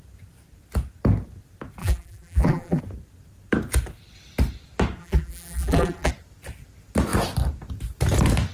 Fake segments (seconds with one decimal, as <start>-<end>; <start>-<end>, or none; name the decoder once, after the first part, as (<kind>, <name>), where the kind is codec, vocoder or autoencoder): 1.8-2.8 (vocoder, BigVGAN v2); 5.0-6.1